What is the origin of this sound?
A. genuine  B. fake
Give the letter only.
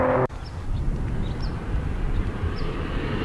A